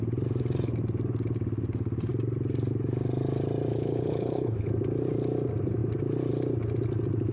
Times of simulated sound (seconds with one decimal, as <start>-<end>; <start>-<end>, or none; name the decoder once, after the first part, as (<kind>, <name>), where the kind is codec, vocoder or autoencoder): 3.7-4.7 (codec, HILCodec)